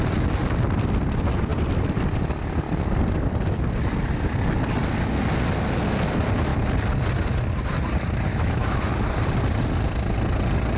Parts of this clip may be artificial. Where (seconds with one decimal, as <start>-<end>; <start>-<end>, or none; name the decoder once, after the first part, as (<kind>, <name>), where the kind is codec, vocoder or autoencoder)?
8.3-8.9 (autoencoder, DAC-VAE)